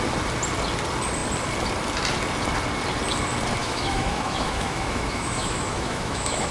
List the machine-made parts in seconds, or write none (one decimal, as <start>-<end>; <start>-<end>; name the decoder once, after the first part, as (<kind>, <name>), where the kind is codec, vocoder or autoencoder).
3.6-6.5 (autoencoder, DAC-VAE)